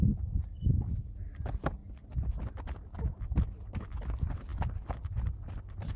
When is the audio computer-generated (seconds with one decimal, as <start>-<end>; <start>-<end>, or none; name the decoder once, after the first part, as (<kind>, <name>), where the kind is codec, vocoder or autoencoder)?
none